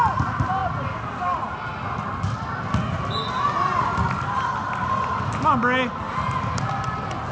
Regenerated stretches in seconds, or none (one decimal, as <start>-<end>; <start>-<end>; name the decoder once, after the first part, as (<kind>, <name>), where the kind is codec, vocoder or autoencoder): none